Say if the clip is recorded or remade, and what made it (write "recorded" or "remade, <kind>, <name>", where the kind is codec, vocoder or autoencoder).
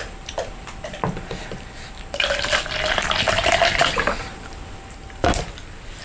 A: recorded